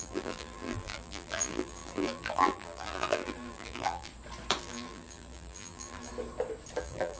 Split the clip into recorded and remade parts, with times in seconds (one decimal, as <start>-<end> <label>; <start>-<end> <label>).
0.0-4.1 remade; 4.1-4.6 recorded; 4.6-6.1 remade; 6.1-6.8 recorded; 6.8-7.2 remade